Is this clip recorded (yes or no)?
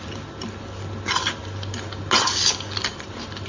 yes